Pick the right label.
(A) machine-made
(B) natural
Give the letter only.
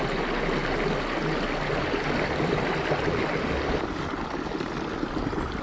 B